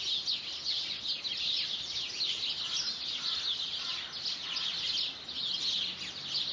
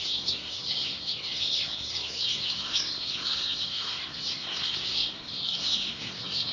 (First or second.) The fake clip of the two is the second